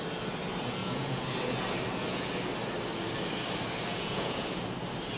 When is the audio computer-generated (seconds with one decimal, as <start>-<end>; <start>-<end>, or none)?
0.8-1.3; 3.9-4.6